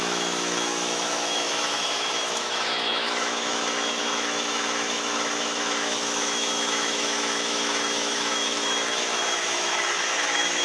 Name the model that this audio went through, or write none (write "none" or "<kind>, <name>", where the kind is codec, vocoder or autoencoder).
autoencoder, DAC-VAE